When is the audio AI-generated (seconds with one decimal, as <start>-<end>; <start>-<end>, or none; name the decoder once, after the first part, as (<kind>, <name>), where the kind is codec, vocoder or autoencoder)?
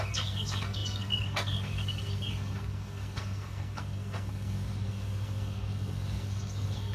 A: 0.0-6.9 (codec, SNAC)